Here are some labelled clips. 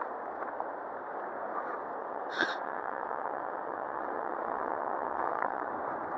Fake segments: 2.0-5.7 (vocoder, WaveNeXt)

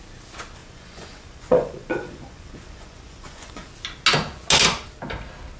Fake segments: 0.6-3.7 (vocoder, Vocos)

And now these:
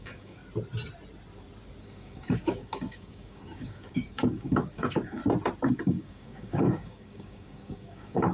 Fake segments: 0.0-0.4 (codec, DAC); 1.8-5.2; 5.7-8.3